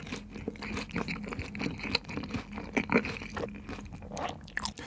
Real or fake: real